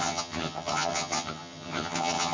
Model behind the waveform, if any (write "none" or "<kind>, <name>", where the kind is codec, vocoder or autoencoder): vocoder, HiFi-GAN